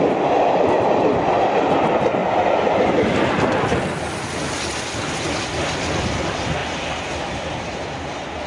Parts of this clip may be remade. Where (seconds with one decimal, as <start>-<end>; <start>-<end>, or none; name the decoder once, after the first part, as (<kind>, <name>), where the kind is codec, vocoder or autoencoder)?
none